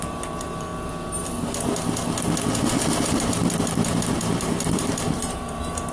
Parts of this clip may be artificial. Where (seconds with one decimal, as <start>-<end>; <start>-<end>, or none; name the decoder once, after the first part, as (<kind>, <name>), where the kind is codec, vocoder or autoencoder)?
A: 0.0-0.7 (vocoder, BigVGAN v2); 3.3-5.9